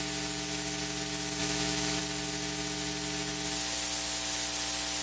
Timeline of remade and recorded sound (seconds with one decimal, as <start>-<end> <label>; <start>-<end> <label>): 0.0-1.4 recorded; 1.4-2.0 remade; 2.0-5.0 recorded

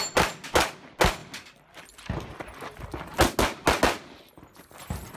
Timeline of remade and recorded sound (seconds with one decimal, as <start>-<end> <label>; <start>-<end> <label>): 0.0-5.2 recorded

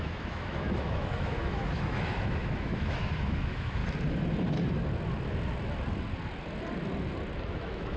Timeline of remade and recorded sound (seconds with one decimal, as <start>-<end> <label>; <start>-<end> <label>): 0.0-3.8 remade; 3.8-7.5 recorded; 7.5-8.0 remade

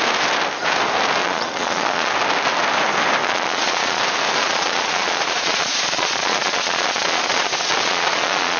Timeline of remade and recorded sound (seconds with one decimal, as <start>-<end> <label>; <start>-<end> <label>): 0.0-1.2 recorded; 1.2-2.1 remade; 2.1-3.2 recorded; 3.2-4.0 remade; 4.0-4.4 recorded; 4.4-8.6 remade

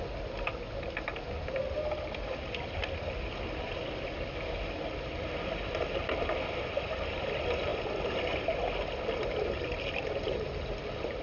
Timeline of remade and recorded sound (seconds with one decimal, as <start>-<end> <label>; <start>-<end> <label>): 0.0-11.2 recorded

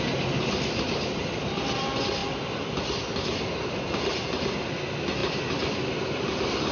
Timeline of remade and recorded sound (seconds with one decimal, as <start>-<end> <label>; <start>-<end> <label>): 0.0-6.7 recorded

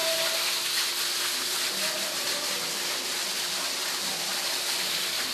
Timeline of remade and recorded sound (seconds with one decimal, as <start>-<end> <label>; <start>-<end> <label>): 0.0-3.2 recorded; 3.2-5.3 remade